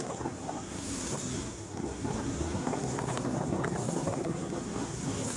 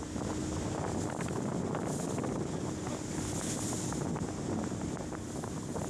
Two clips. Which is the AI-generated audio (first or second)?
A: first